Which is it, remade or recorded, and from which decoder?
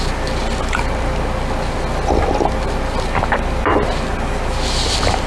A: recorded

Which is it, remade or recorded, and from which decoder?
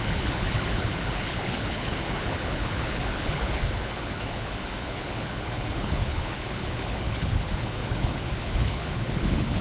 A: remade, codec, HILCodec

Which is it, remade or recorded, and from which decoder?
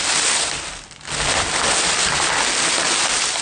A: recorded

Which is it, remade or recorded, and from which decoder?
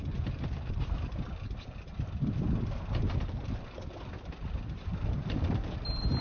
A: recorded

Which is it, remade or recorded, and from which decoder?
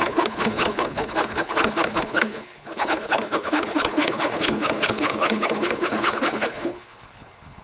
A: remade, codec, HILCodec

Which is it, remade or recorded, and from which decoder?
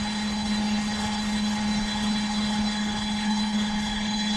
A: remade, codec, HILCodec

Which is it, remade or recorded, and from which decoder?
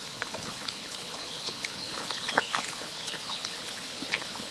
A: remade, codec, HILCodec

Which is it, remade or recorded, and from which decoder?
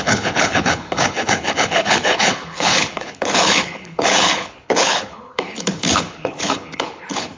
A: remade, codec, HILCodec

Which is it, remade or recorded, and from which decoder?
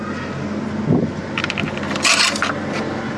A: recorded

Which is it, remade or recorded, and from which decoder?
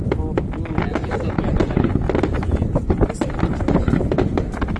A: recorded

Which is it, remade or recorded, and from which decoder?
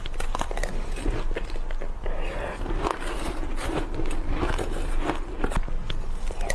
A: recorded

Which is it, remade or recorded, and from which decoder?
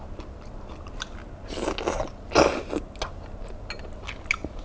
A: recorded